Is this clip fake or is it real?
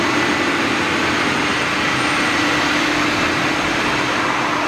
real